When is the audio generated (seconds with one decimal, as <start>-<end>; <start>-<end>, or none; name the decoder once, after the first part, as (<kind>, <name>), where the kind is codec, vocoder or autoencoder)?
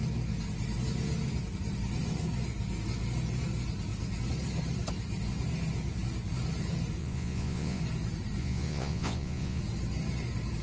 7.0-7.8 (vocoder, Vocos); 8.4-9.6